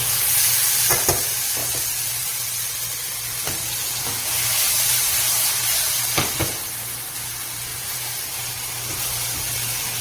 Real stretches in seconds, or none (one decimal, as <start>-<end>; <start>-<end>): 0.0-1.6; 2.7-4.1; 5.4-7.7; 8.5-10.0